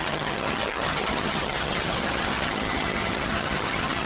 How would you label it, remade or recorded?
remade